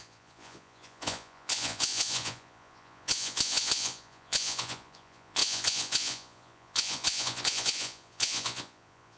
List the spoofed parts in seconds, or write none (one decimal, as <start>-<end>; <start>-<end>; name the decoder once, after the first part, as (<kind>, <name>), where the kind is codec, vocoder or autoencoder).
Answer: 0.0-9.2 (vocoder, Vocos)